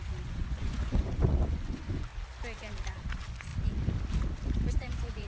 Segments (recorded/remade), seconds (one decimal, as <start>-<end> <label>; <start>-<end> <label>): 0.0-2.1 remade; 2.1-2.7 recorded; 2.7-3.5 remade; 3.5-4.7 recorded; 4.7-5.3 remade